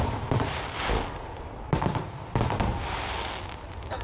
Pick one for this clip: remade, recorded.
recorded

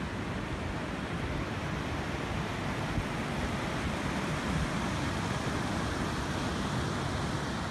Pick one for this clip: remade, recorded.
recorded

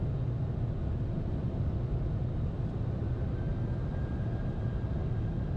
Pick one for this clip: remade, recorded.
recorded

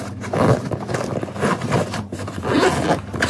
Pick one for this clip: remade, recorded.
recorded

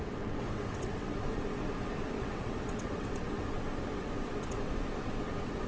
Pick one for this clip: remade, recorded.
remade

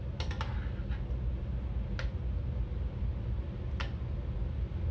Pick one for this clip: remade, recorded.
recorded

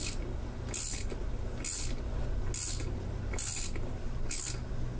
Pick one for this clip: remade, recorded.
recorded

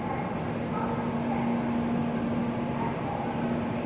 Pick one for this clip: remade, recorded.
recorded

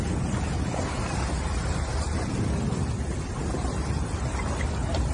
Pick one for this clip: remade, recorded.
recorded